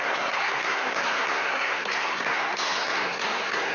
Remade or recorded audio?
remade